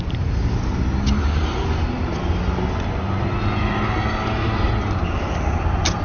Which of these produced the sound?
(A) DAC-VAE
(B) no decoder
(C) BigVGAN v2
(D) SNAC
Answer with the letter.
B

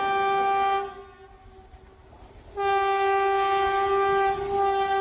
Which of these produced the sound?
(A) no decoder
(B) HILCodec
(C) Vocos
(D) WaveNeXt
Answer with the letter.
A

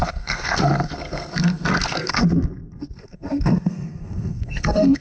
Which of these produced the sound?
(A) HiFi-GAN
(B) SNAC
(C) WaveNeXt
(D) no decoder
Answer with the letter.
B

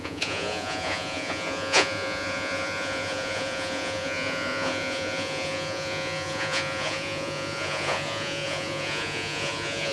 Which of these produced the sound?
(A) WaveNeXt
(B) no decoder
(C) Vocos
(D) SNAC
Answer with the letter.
C